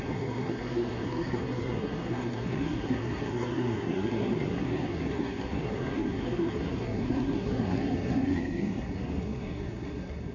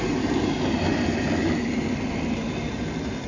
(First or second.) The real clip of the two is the second